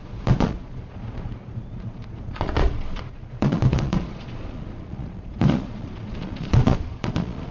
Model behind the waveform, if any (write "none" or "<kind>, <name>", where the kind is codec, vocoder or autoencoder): vocoder, Vocos